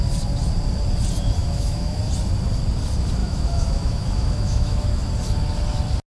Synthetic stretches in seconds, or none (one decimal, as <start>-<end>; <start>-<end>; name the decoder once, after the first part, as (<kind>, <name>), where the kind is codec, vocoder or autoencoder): 1.4-2.0 (autoencoder, DAC-VAE); 3.2-5.0